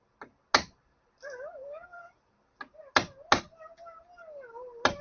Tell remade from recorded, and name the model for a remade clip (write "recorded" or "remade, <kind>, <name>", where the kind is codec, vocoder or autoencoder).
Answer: recorded